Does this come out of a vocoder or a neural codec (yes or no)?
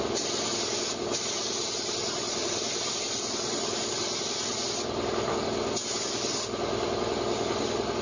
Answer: no